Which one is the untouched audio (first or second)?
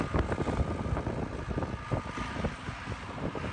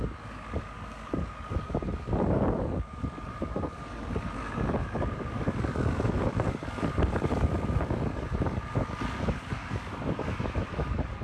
first